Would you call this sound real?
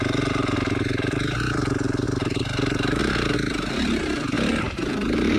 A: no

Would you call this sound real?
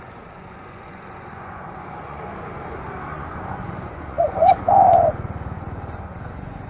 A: no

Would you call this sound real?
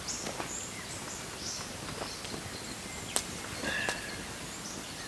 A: yes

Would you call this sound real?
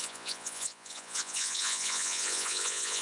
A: no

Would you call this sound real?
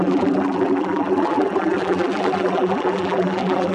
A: no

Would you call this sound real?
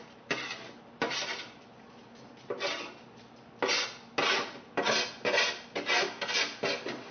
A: yes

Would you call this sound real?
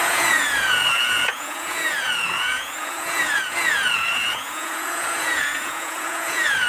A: no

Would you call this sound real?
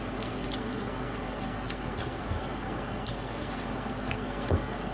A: no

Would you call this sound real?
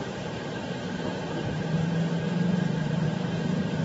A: no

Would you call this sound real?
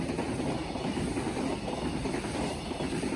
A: yes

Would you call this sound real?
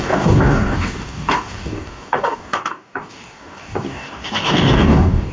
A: no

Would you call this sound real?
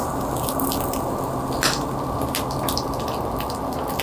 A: yes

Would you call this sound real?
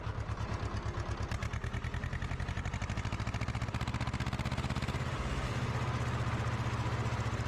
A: yes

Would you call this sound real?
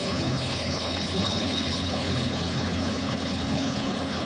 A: no